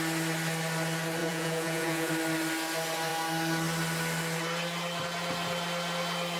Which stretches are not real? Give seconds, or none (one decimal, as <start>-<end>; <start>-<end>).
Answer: 1.2-2.1